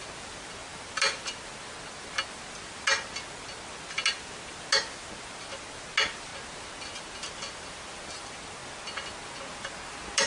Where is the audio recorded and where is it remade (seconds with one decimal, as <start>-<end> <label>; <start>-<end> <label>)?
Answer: 0.0-10.3 recorded